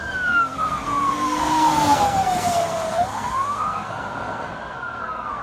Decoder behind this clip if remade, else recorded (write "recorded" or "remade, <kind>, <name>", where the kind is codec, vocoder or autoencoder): remade, codec, SNAC